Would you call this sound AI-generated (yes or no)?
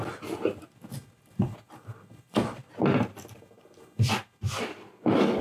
no